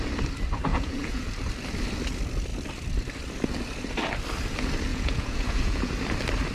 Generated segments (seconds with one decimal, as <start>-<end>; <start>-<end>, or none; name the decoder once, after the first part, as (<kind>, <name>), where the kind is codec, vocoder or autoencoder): 0.7-1.3 (vocoder, Vocos); 4.9-5.9

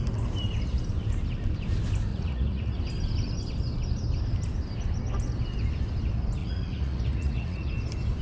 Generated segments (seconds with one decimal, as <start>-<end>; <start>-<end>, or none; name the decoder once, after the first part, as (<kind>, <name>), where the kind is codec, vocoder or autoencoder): 2.1-2.8 (vocoder, Vocos); 6.4-7.7

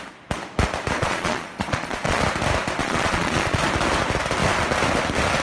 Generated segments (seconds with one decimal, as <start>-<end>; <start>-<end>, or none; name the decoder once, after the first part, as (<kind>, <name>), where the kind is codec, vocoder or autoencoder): 1.0-2.2 (vocoder, Vocos); 2.8-3.6

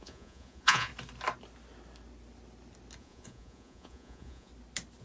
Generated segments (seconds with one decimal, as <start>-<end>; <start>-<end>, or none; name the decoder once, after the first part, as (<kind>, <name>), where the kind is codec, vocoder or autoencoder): 0.0-0.9 (vocoder, Vocos); 3.0-4.5